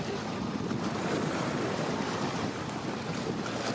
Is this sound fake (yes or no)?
no